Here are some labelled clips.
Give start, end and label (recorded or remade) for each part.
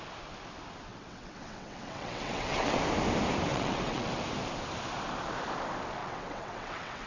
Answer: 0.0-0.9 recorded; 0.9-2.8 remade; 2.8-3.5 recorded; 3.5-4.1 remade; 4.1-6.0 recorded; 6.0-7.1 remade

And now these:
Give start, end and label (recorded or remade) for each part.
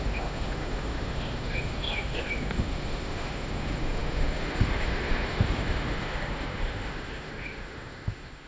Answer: 0.0-8.5 remade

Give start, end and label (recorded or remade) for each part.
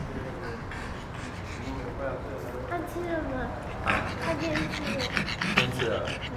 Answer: 0.0-6.4 recorded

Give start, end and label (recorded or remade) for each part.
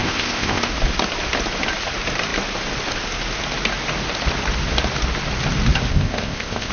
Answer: 0.0-0.7 remade; 0.7-5.9 recorded; 5.9-6.7 remade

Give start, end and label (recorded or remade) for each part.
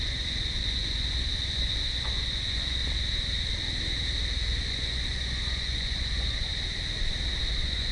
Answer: 0.0-2.8 remade; 2.8-4.7 recorded; 4.7-6.5 remade; 6.5-7.5 recorded; 7.5-7.9 remade